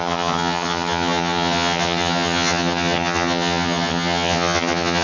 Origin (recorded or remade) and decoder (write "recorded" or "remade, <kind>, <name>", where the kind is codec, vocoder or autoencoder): remade, vocoder, HiFi-GAN